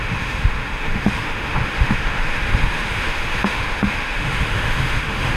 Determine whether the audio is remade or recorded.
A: remade